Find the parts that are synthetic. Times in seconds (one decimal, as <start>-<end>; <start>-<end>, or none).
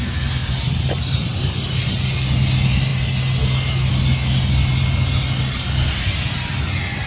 none